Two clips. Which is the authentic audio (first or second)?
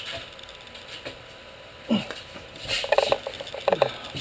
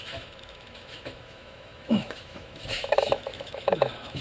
first